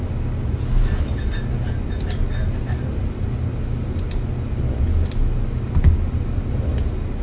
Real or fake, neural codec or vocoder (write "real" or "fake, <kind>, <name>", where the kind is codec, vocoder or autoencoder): real